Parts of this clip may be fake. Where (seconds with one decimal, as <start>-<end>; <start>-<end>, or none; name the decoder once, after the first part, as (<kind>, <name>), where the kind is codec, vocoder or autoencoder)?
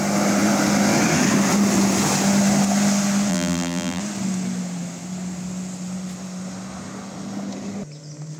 3.3-4.0 (vocoder, BigVGAN v2)